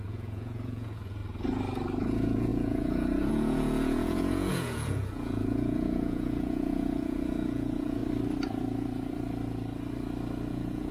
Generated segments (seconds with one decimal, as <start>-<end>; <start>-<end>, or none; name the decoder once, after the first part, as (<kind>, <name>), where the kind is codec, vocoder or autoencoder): 0.0-1.2 (vocoder, Vocos); 2.0-8.0; 10.5-10.9